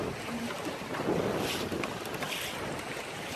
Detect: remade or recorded recorded